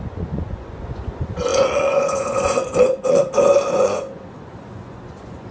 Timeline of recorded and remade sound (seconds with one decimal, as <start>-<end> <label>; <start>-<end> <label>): 0.0-3.2 remade; 3.2-3.7 recorded; 3.7-5.5 remade